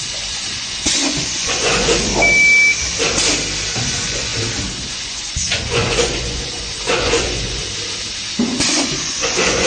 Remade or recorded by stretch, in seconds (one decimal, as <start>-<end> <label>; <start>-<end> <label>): 0.0-2.1 remade; 2.1-3.8 recorded; 3.8-4.3 remade; 4.3-4.9 recorded; 4.9-7.6 remade; 7.6-8.3 recorded; 8.3-9.7 remade